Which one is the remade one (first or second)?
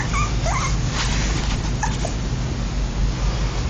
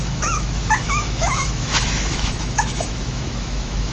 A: second